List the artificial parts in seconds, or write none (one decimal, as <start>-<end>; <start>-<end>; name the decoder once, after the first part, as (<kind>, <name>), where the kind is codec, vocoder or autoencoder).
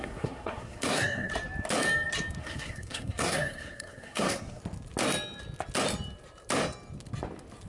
0.0-1.3 (codec, SNAC); 2.4-4.6